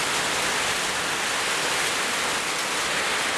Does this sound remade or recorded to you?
recorded